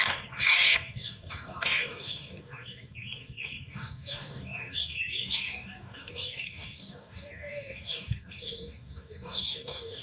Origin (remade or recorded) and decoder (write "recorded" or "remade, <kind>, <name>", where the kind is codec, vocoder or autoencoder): remade, codec, DAC